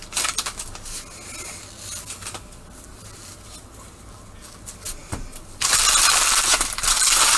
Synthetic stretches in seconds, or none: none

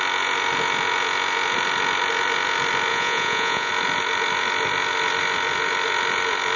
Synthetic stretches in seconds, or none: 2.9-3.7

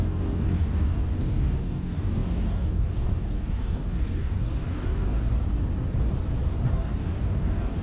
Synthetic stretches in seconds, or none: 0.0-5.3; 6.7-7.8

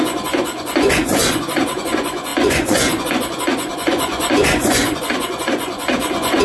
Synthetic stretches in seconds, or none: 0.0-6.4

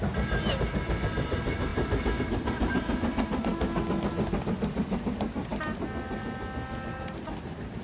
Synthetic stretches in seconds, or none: none

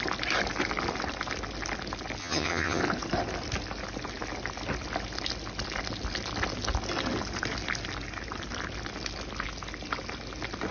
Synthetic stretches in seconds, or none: 2.2-2.8